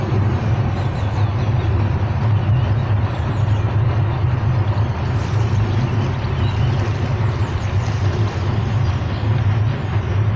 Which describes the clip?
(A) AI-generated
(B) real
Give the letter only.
B